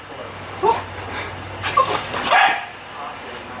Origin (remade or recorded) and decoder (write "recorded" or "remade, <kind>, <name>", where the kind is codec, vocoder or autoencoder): remade, vocoder, BigVGAN v2